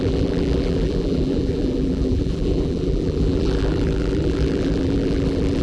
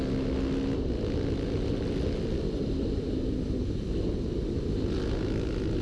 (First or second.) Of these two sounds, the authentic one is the second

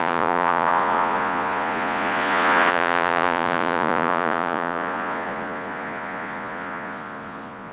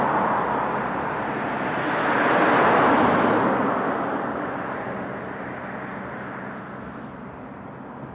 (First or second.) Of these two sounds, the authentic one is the second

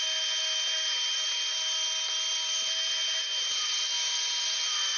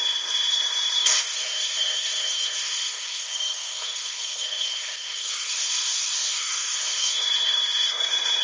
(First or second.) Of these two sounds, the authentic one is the first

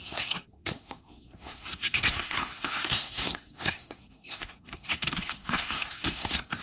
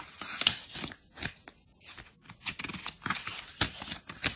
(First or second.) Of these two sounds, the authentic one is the second